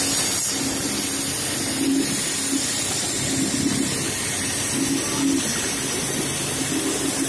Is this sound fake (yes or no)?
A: no